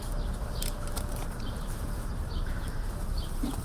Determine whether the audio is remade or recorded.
remade